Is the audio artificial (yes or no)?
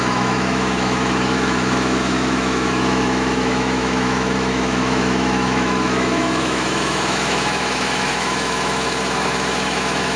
yes